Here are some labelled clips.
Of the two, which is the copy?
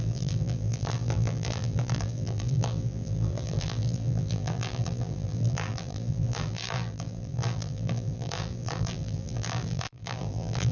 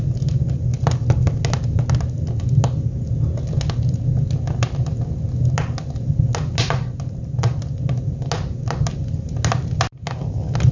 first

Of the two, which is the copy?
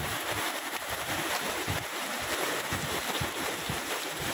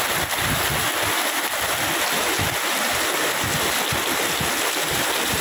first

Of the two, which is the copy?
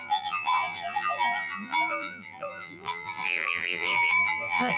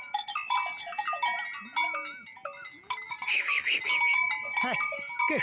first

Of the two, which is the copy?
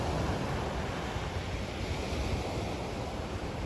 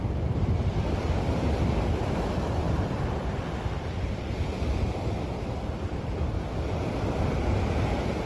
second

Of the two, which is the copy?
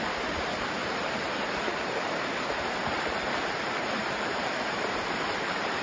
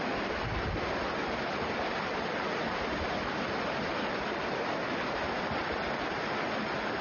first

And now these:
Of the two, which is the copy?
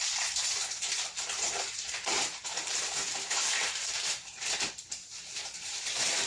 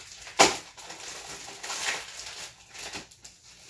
first